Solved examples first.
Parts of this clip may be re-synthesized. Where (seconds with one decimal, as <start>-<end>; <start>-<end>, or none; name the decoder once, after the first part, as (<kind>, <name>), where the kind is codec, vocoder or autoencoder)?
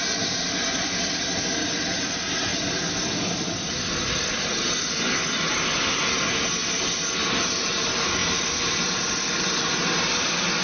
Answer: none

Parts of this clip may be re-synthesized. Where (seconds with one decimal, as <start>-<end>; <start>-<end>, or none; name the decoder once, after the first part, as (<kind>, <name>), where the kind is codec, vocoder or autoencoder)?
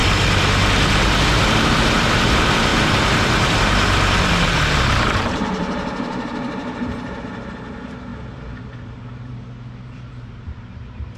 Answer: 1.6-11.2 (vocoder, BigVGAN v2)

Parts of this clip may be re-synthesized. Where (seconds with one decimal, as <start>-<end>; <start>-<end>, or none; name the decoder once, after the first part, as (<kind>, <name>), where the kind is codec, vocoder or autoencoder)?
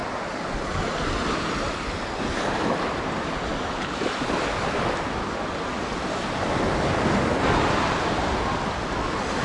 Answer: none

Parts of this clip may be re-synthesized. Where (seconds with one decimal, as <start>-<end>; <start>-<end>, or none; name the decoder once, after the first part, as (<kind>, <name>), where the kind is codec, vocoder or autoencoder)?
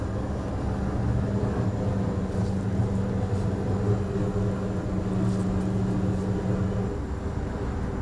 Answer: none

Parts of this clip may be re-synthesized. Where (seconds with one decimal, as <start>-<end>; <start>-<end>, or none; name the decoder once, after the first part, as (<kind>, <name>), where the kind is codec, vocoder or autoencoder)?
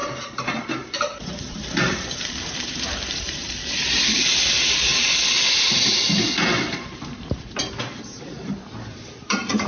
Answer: 0.0-3.6 (vocoder, BigVGAN v2); 4.2-4.9; 6.6-9.7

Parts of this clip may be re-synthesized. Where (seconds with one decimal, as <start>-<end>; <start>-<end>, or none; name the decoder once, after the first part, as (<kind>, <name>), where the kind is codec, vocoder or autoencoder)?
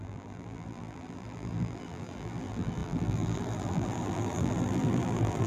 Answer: 0.0-5.5 (vocoder, BigVGAN v2)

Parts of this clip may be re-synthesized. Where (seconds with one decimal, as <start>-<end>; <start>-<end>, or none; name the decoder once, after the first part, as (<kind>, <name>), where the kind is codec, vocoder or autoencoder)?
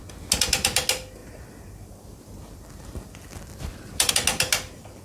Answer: 1.2-4.1 (vocoder, BigVGAN v2)